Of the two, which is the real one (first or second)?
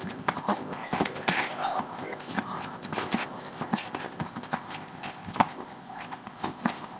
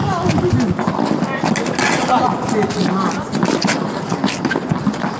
second